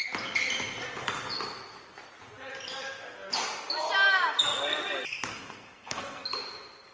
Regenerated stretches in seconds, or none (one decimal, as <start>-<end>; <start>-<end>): 5.3-6.2